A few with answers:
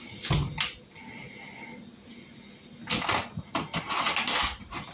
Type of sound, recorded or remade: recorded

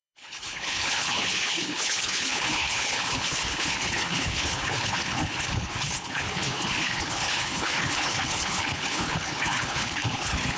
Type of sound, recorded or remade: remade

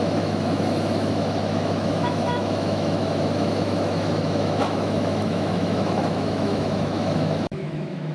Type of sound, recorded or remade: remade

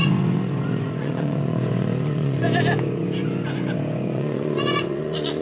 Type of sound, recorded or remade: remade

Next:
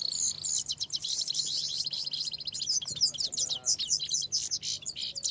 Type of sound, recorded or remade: recorded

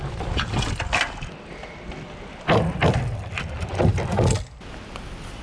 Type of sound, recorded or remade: recorded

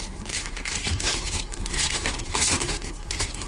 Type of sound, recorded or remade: remade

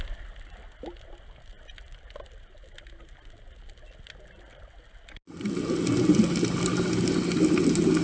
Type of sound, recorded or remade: recorded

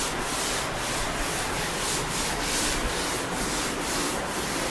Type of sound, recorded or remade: remade